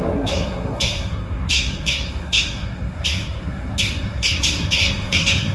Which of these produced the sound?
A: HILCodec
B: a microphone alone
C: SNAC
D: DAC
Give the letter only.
C